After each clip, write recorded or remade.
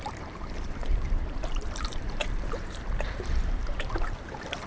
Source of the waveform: remade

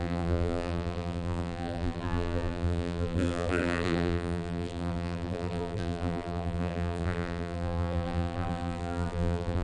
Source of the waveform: remade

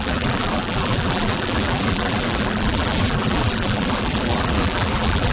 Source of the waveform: remade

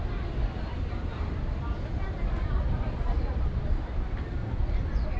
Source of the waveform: remade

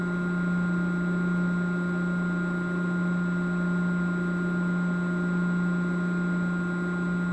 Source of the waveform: recorded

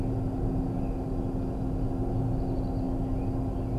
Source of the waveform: recorded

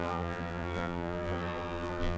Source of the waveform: remade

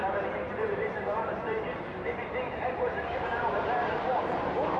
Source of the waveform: remade